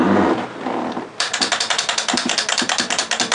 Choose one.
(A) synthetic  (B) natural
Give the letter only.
B